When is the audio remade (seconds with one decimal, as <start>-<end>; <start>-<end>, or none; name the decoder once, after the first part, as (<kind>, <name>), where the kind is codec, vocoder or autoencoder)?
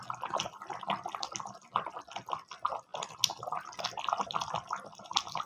none